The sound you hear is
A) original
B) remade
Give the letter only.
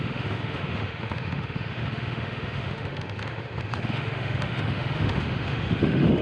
B